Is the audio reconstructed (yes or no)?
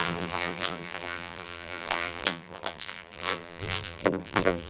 yes